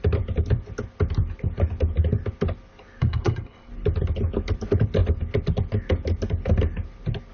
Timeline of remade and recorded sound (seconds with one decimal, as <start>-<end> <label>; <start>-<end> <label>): 0.0-3.0 recorded; 3.0-3.7 remade; 3.7-7.3 recorded